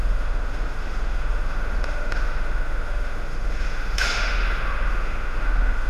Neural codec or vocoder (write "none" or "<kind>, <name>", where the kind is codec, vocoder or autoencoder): autoencoder, DAC-VAE